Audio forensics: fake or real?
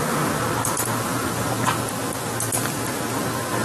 real